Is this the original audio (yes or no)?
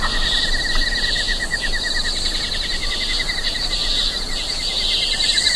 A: yes